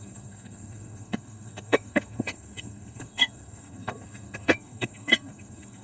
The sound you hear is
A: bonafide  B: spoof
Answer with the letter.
B